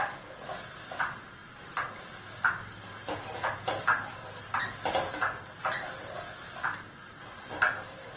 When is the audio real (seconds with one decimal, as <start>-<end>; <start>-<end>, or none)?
0.0-8.2